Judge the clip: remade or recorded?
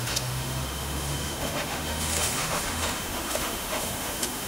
remade